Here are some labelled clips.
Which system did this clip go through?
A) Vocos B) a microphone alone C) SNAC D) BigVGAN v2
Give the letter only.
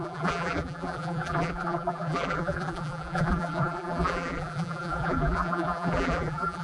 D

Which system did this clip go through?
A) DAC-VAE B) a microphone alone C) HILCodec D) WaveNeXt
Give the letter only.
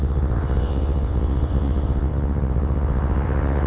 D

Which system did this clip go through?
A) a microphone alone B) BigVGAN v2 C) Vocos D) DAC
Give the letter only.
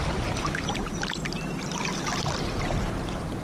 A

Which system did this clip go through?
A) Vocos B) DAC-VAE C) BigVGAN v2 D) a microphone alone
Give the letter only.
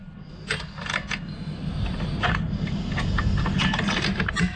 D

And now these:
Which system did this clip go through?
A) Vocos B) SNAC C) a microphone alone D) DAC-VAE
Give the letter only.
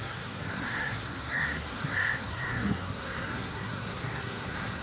B